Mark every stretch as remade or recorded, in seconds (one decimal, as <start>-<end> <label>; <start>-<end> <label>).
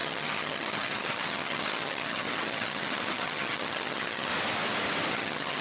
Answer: 0.0-4.3 remade; 4.3-5.1 recorded; 5.1-5.6 remade